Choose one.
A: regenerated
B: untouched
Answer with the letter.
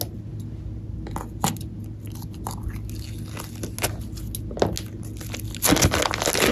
B